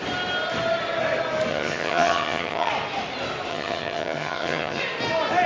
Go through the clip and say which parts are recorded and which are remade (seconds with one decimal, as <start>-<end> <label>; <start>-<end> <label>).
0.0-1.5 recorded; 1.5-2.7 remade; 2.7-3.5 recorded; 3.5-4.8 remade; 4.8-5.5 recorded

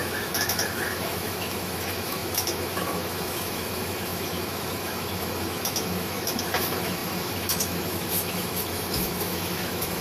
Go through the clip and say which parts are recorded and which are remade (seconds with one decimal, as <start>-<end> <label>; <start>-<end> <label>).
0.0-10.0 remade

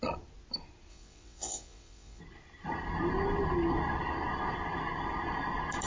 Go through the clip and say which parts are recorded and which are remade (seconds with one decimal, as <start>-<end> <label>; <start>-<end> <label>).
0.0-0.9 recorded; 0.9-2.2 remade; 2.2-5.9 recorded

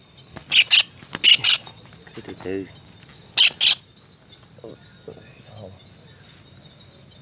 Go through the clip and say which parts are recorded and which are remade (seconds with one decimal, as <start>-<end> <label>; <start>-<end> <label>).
0.0-7.2 recorded

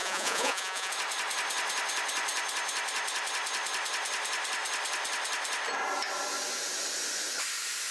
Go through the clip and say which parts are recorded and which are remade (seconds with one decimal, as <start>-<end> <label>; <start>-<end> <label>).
0.0-0.9 remade; 0.9-7.9 recorded

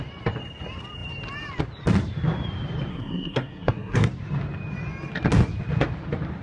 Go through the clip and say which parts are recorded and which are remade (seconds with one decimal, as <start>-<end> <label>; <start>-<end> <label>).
0.0-2.9 recorded; 2.9-4.1 remade; 4.1-6.4 recorded

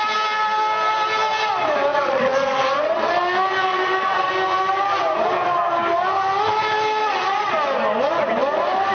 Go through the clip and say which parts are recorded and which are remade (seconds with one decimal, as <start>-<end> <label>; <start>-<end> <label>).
0.0-1.9 recorded; 1.9-3.1 remade; 3.1-3.7 recorded; 3.7-4.3 remade; 4.3-7.0 recorded; 7.0-7.5 remade; 7.5-8.9 recorded

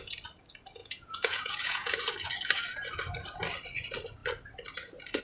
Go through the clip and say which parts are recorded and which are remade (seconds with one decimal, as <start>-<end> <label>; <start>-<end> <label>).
0.0-0.8 recorded; 0.8-1.9 remade; 1.9-5.2 recorded